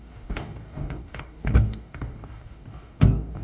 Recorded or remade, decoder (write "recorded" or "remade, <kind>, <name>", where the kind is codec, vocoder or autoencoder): remade, codec, DAC